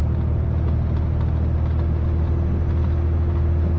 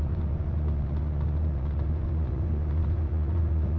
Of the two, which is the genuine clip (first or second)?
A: first